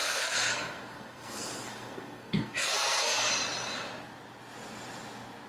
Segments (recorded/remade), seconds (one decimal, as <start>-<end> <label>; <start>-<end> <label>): 0.0-3.3 remade; 3.3-5.5 recorded